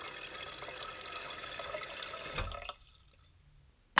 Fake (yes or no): no